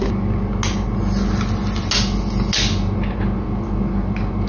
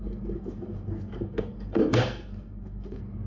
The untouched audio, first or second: first